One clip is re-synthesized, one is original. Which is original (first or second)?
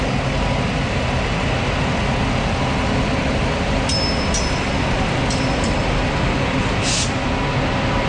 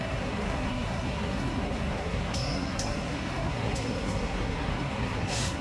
first